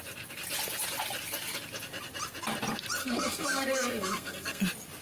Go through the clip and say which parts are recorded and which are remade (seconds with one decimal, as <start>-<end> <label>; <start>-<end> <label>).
0.0-3.0 recorded; 3.0-4.6 remade; 4.6-5.0 recorded